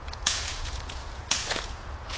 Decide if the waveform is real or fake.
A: fake